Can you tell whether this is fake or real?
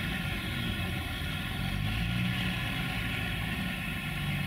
real